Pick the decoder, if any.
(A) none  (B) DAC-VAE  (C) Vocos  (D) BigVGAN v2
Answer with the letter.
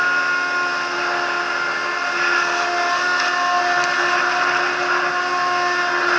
A